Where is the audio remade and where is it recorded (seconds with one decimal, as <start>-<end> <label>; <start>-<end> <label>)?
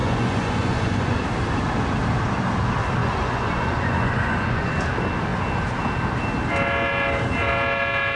0.0-1.2 remade; 1.2-3.0 recorded; 3.0-4.8 remade; 4.8-8.2 recorded